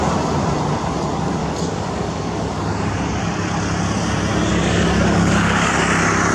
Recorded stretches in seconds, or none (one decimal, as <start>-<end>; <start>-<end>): 0.0-1.4; 3.2-4.5; 5.8-6.3